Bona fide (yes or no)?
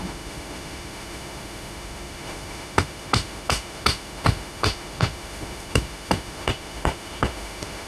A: no